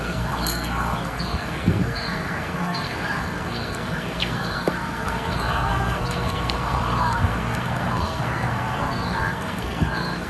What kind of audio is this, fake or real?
fake